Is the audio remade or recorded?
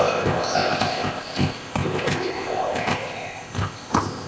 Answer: remade